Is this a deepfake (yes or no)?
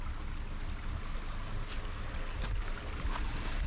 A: no